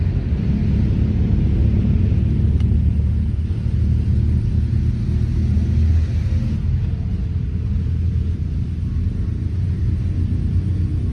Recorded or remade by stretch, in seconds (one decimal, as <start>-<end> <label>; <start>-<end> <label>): 0.0-11.1 recorded